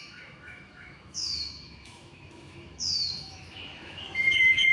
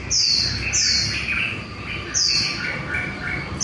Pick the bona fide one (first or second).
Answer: second